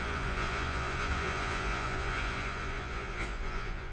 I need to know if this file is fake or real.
fake